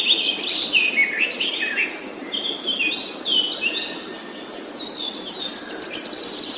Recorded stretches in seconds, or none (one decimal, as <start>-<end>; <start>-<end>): 0.0-6.6